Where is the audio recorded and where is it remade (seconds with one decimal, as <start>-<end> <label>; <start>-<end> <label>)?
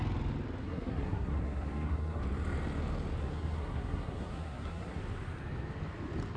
0.0-0.6 recorded; 0.6-2.2 remade; 2.2-3.2 recorded; 3.2-5.0 remade; 5.0-6.4 recorded